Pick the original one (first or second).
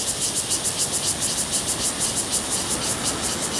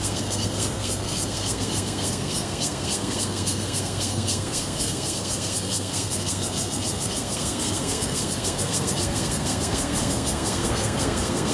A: first